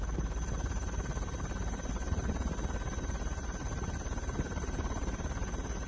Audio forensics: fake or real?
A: real